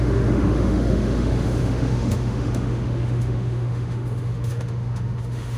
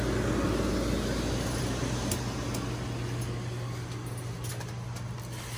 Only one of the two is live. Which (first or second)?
second